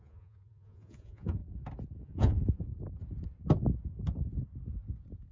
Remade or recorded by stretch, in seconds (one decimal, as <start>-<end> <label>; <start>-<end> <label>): 0.0-1.4 remade; 1.4-2.0 recorded; 2.0-2.7 remade; 2.7-5.3 recorded